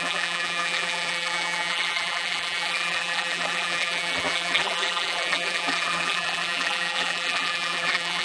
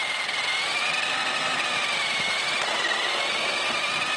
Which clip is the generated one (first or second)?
first